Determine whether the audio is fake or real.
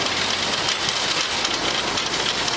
real